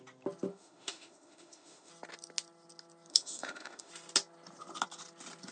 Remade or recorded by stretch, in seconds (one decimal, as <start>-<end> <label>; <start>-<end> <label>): 0.0-0.5 recorded; 0.5-1.9 remade; 1.9-3.1 recorded; 3.1-3.9 remade; 3.9-5.5 recorded